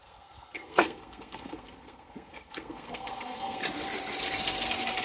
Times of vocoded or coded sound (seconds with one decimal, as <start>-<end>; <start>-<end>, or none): 0.0-3.6